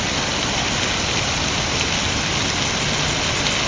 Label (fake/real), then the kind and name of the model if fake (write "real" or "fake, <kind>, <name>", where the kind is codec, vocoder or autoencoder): real